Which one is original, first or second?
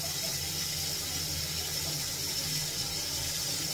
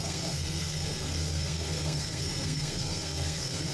first